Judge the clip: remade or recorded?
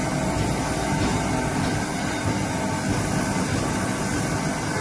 recorded